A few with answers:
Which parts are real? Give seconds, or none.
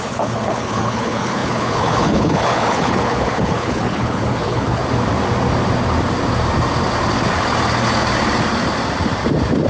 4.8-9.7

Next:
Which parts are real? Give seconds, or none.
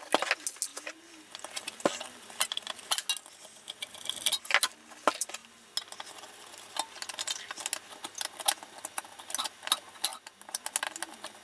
0.0-11.4